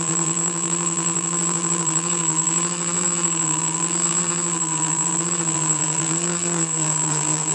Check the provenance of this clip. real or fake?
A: fake